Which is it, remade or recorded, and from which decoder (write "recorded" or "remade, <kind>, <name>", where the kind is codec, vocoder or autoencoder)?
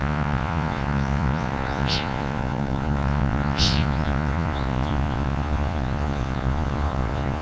remade, vocoder, Vocos